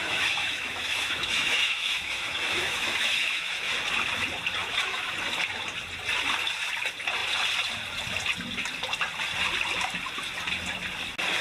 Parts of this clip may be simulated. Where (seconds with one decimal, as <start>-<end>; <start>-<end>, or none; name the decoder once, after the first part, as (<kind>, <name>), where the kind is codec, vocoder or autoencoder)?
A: 0.0-3.7 (autoencoder, DAC-VAE); 4.6-5.1